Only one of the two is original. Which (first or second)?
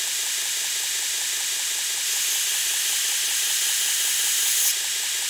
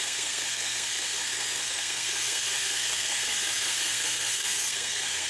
first